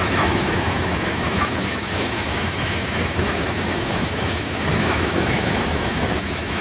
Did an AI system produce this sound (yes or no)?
yes